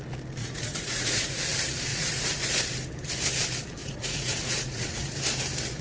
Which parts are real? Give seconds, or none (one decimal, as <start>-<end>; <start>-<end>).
0.0-0.4; 1.4-1.9; 2.6-3.8; 5.2-5.8